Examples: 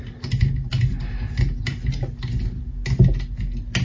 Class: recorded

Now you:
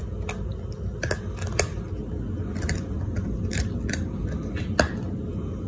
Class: recorded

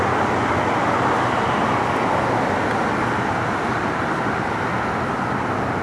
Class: recorded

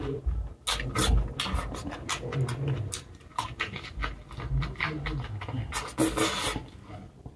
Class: recorded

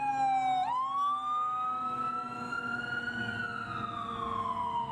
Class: recorded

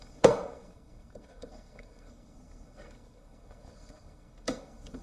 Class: remade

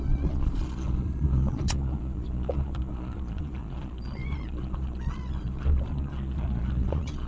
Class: remade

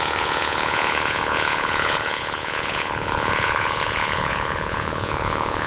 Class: remade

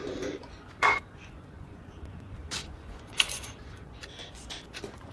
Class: remade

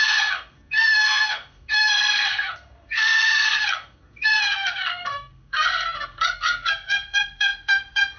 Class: remade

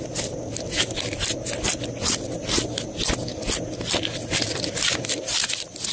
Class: recorded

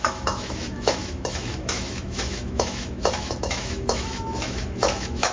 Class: remade